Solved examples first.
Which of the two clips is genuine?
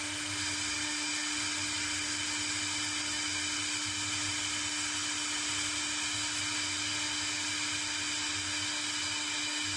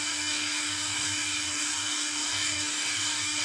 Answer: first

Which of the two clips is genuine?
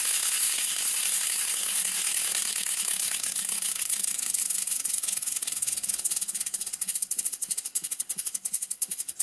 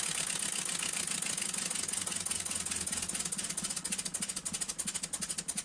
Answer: second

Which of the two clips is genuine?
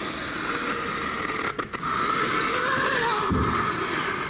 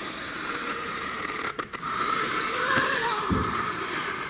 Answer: first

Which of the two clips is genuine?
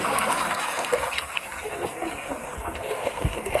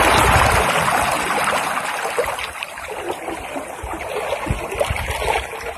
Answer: second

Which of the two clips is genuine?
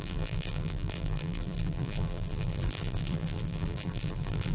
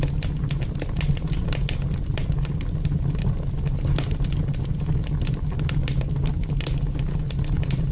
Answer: second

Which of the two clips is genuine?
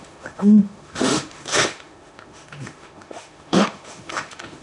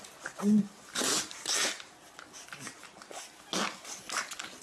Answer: second